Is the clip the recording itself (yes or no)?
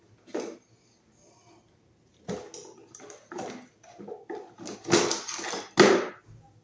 yes